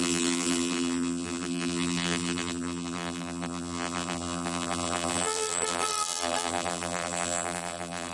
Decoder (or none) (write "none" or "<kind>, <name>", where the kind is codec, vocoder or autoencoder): vocoder, BigVGAN v2